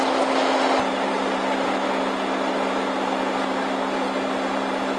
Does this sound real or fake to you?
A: real